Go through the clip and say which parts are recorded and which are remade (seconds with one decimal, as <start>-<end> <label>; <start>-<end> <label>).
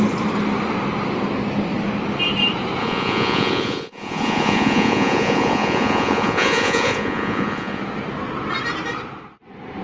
0.0-2.8 recorded; 2.8-7.8 remade; 7.8-9.8 recorded